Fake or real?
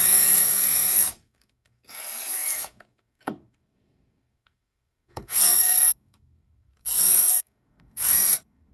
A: fake